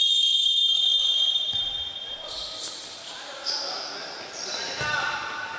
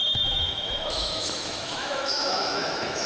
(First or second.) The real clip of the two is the first